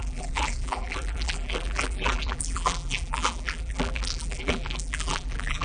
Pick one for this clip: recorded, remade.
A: remade